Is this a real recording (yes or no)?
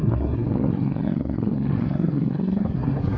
no